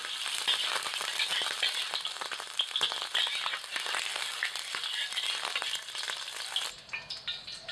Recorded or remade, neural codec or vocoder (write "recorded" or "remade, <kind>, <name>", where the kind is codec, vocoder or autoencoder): recorded